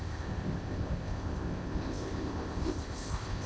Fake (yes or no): yes